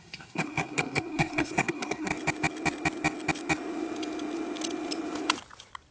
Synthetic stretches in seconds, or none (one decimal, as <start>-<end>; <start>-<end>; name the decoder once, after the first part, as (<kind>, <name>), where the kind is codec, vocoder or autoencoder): 0.0-2.1 (codec, SNAC)